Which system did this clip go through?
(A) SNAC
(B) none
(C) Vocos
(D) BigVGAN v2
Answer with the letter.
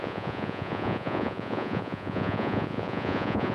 C